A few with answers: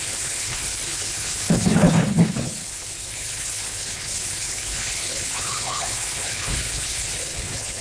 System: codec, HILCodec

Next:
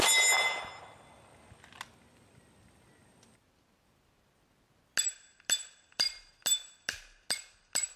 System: none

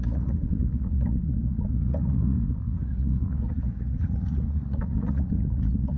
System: vocoder, Vocos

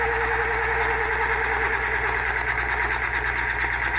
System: none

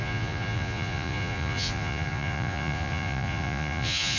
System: vocoder, Vocos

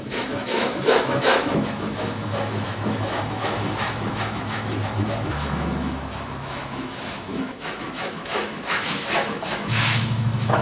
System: autoencoder, DAC-VAE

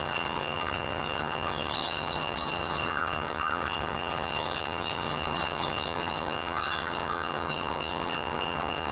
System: vocoder, HiFi-GAN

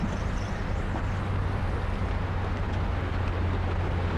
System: none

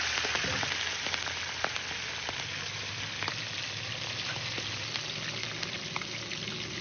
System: none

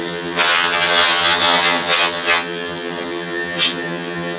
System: vocoder, HiFi-GAN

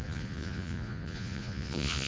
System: vocoder, Vocos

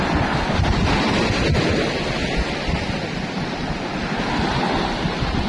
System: none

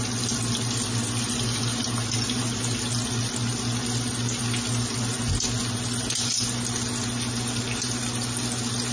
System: none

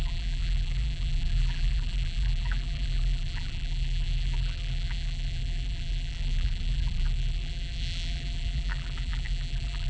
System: vocoder, BigVGAN v2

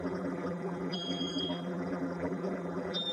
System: vocoder, BigVGAN v2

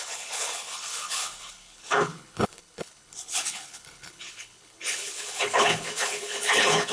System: codec, HILCodec